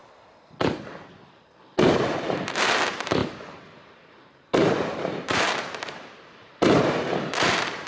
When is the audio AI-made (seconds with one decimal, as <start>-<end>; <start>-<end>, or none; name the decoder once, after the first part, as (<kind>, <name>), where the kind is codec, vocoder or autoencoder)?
1.1-7.9 (vocoder, BigVGAN v2)

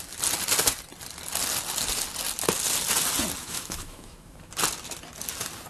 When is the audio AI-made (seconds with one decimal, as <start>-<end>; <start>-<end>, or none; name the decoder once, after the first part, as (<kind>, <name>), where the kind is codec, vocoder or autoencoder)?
3.4-4.5 (autoencoder, DAC-VAE)

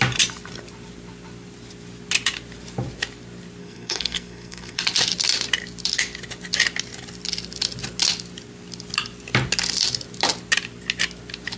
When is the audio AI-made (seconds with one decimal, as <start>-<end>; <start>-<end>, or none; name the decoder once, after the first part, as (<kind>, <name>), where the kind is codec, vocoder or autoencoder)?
3.6-4.8 (codec, SNAC)

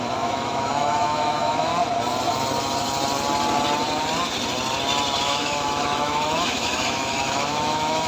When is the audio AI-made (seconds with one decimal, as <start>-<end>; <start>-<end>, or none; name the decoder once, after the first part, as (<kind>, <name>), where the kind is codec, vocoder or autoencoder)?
0.0-1.7 (autoencoder, DAC-VAE); 5.2-8.1

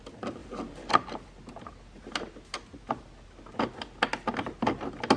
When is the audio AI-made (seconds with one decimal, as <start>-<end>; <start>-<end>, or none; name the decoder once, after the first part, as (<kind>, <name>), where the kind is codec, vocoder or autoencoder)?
none